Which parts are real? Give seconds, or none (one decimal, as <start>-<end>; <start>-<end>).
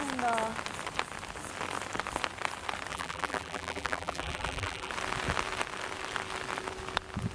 0.0-2.9; 4.9-7.3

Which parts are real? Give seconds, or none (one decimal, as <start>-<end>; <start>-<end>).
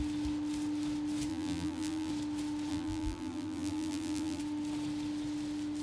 0.0-1.3; 2.1-2.7; 4.4-5.8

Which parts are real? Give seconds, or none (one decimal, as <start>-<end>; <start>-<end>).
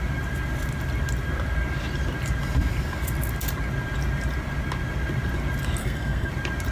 0.0-5.8; 6.3-6.7